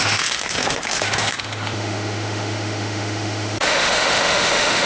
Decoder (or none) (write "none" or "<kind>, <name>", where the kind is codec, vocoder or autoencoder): autoencoder, DAC-VAE